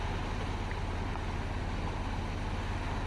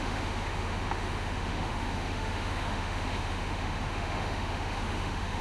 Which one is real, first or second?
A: first